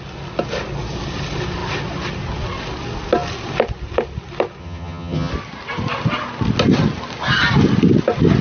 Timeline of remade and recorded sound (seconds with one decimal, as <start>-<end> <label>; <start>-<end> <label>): 0.0-4.6 recorded; 4.6-5.3 remade; 5.3-8.4 recorded